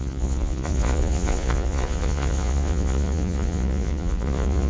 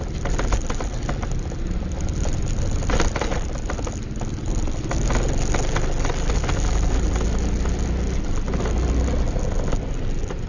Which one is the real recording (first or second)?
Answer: second